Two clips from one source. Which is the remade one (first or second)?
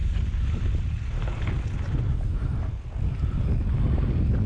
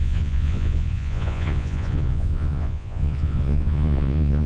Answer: second